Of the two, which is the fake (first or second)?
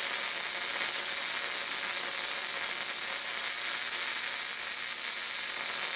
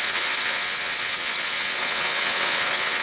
second